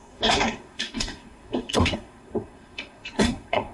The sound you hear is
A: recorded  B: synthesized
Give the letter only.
B